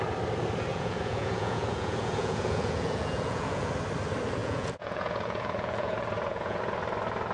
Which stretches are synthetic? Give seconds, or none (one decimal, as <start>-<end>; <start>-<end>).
0.7-3.7; 4.4-6.6